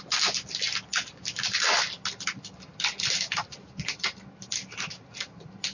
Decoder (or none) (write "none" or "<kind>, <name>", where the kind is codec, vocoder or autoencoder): none